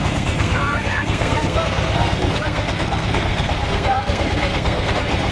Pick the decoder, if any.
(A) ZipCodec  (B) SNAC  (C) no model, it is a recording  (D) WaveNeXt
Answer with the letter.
B